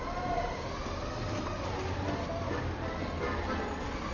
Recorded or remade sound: recorded